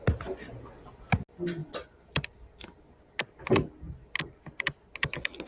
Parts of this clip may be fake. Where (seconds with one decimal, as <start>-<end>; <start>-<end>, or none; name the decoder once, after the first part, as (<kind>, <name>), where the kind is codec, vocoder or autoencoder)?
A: none